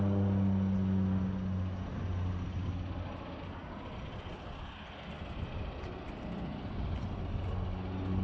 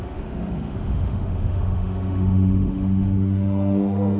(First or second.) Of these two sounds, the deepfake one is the second